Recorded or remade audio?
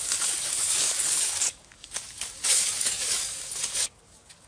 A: remade